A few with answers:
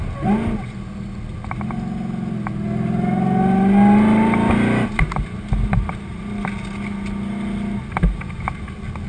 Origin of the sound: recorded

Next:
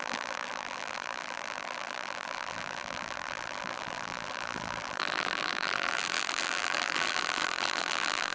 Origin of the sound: remade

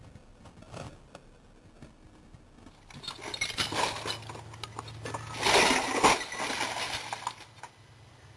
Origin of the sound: recorded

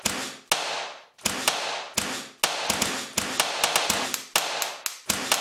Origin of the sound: recorded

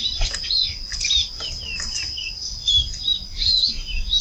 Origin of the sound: recorded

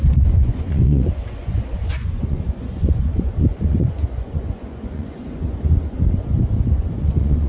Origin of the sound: remade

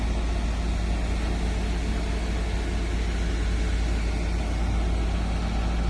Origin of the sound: recorded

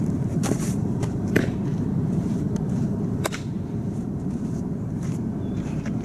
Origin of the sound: remade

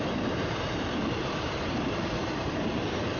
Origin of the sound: remade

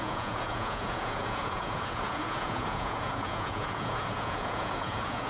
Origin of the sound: remade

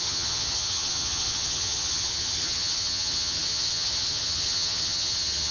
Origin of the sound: remade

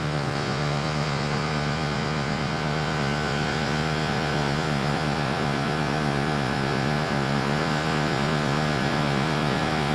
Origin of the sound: remade